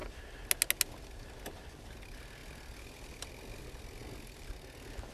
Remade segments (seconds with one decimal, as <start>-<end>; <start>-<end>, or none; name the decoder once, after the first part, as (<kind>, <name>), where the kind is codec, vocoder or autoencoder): none